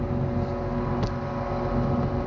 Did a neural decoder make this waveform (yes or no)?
no